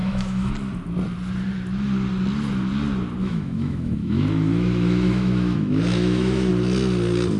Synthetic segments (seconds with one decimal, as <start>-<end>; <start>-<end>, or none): 0.0-0.5; 3.2-6.5